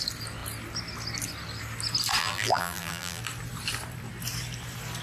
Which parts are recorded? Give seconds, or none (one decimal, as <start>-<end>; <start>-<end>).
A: 0.0-2.2; 3.2-5.0